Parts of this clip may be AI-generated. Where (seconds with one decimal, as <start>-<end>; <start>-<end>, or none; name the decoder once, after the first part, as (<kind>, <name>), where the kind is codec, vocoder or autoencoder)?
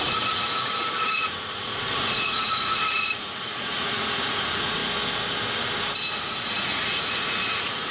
0.0-4.8 (vocoder, Vocos); 6.1-7.9